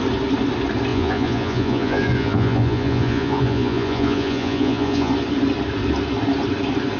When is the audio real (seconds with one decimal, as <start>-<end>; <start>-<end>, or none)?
0.0-0.9; 5.1-7.0